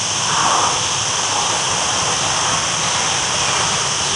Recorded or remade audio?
recorded